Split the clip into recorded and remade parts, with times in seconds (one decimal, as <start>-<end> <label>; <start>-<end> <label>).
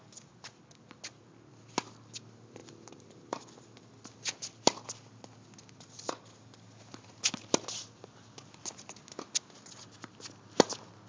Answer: 0.0-2.6 recorded; 2.6-3.9 remade; 3.9-11.1 recorded